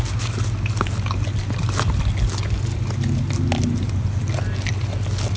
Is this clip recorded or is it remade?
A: recorded